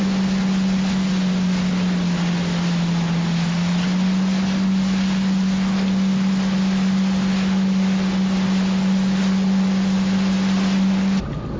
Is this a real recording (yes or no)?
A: yes